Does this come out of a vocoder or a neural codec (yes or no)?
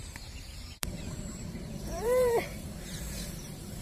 yes